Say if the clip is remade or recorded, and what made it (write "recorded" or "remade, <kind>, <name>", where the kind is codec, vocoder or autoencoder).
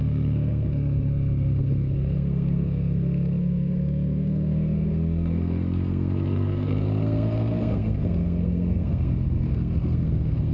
remade, codec, SNAC